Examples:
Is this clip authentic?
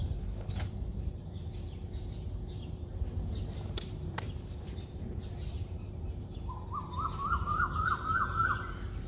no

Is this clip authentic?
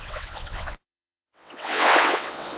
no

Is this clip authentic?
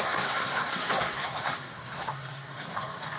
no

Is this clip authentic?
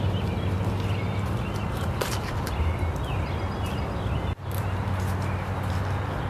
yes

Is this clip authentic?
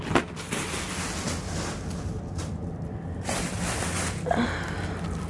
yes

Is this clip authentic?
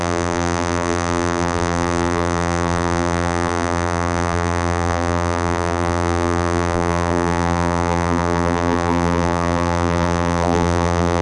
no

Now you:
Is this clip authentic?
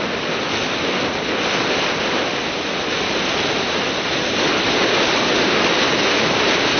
yes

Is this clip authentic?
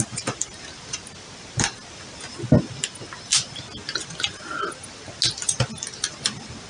yes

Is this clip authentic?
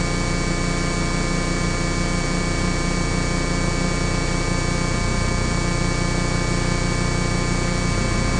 yes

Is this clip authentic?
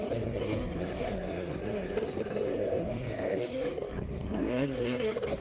no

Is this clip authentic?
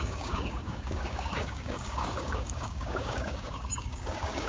no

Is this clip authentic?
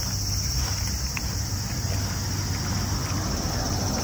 yes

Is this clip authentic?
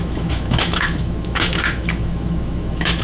no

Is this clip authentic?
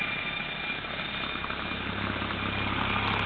yes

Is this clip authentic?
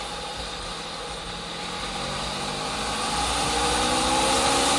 yes